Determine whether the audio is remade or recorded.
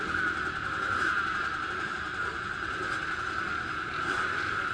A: recorded